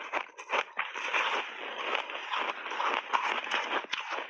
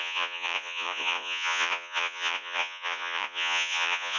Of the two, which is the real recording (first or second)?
first